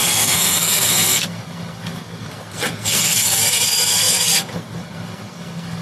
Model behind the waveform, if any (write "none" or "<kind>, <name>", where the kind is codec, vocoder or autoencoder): codec, SNAC